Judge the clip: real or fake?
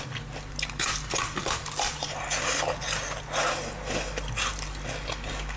real